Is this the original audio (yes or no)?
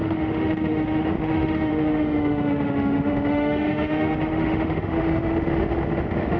no